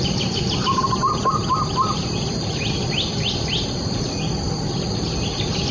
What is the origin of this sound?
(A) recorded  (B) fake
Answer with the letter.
B